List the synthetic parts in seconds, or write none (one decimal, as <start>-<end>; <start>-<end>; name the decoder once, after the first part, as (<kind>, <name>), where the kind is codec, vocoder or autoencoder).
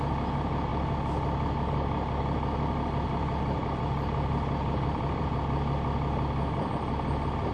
none